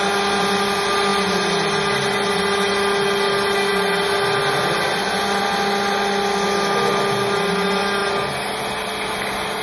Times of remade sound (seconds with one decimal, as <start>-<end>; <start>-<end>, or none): none